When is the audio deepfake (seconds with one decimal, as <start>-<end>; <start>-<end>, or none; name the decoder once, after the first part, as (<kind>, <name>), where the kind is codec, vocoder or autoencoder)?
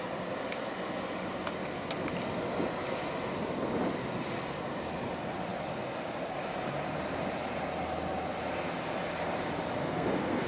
9.8-10.5 (codec, SNAC)